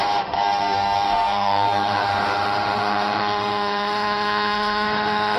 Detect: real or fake fake